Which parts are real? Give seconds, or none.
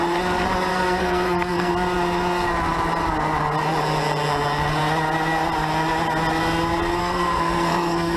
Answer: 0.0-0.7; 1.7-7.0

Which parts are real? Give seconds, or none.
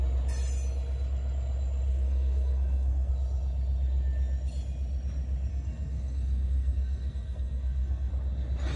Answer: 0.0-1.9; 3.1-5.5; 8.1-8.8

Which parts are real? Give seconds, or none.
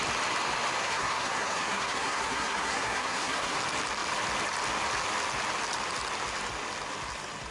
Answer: 0.0-0.8; 3.6-7.5